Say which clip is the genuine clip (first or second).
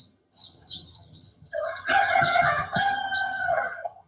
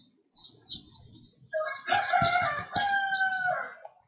second